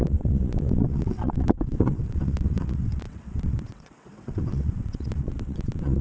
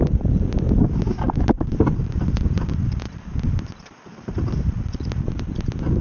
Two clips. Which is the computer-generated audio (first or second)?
first